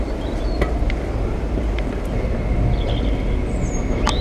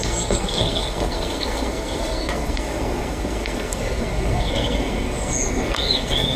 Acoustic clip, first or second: first